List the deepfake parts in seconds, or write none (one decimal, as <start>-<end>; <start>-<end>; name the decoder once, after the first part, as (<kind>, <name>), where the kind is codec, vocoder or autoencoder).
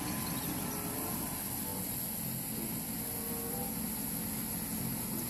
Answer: none